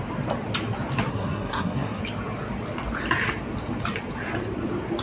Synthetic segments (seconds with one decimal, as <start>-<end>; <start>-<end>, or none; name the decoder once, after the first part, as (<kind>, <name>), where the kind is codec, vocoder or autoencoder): 1.1-2.0 (codec, SNAC)